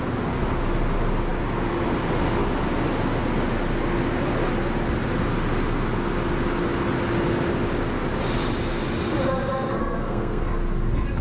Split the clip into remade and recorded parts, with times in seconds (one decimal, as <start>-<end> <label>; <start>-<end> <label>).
0.0-9.8 recorded; 9.8-10.5 remade; 10.5-11.2 recorded